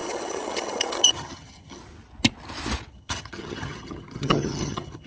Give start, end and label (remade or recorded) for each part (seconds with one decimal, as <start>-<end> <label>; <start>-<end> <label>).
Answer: 0.0-1.8 remade; 1.8-2.9 recorded; 2.9-5.1 remade